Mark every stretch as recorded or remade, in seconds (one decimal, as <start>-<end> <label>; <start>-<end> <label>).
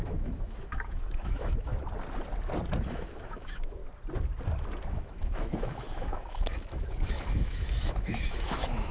0.0-1.7 remade; 1.7-2.8 recorded; 2.8-3.8 remade; 3.8-4.9 recorded; 4.9-8.9 remade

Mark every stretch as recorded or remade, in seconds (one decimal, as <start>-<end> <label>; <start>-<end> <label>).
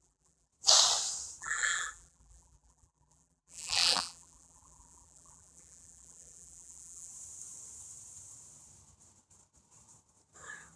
0.0-0.5 remade; 0.5-1.4 recorded; 1.4-7.1 remade; 7.1-10.8 recorded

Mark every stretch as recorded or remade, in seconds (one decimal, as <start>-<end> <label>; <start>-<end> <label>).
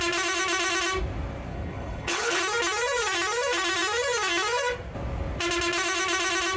0.0-1.5 recorded; 1.5-2.4 remade; 2.4-6.6 recorded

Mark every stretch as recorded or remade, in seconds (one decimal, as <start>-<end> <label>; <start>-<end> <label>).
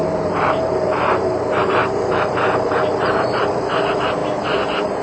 0.0-5.0 remade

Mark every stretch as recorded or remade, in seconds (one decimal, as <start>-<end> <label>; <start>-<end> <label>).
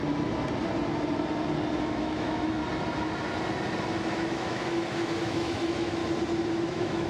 0.0-1.8 recorded; 1.8-2.6 remade; 2.6-4.1 recorded; 4.1-6.0 remade; 6.0-6.6 recorded; 6.6-7.1 remade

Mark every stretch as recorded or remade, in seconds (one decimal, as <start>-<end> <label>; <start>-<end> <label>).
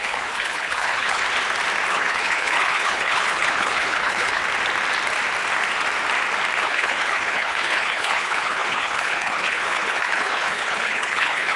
0.0-1.2 remade; 1.2-1.9 recorded; 1.9-4.4 remade; 4.4-6.6 recorded; 6.6-11.6 remade